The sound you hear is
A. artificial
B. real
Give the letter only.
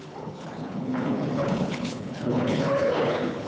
A